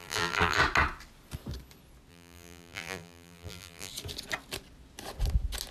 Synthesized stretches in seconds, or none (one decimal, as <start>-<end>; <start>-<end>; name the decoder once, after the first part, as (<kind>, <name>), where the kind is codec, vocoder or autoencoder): 0.0-0.6 (vocoder, BigVGAN v2); 2.1-3.9